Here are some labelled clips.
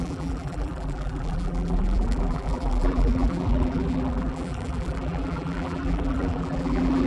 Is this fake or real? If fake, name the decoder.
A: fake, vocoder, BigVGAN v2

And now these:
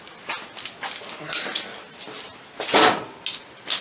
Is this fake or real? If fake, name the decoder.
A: real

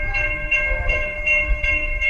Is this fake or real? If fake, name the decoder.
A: fake, codec, SNAC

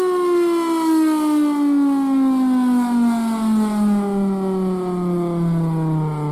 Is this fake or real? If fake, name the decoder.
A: real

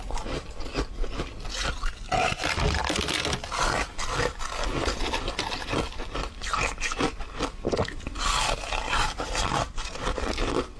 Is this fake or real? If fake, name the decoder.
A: real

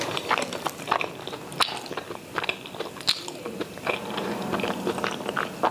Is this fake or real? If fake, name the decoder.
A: real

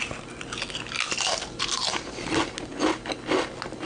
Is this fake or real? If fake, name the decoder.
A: real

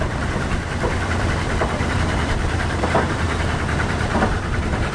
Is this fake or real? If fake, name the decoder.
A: fake, vocoder, BigVGAN v2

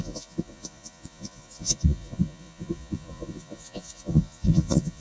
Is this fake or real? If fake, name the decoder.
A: fake, vocoder, Vocos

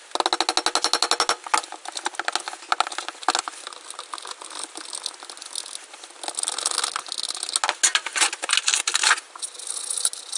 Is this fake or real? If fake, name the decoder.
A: real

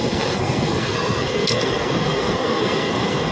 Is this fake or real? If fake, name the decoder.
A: fake, codec, SNAC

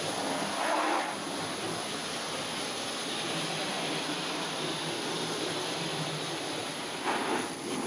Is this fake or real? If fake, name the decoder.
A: real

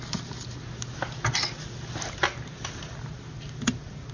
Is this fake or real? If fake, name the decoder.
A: real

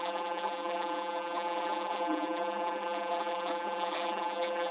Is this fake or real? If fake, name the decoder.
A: fake, vocoder, BigVGAN v2